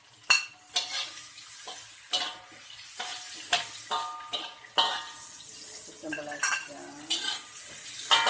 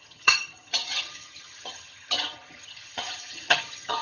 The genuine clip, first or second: first